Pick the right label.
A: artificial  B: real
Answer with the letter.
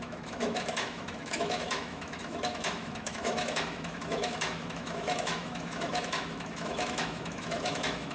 A